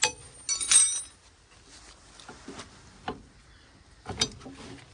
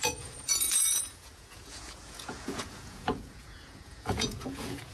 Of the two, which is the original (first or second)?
first